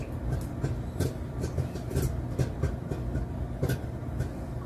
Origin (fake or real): real